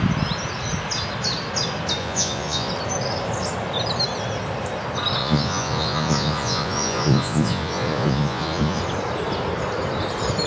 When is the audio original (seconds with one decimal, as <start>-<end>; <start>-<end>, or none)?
0.0-2.0; 2.7-5.2; 8.8-10.5